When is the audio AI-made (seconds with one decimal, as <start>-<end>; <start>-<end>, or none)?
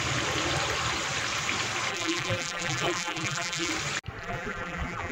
1.9-3.7; 4.2-5.1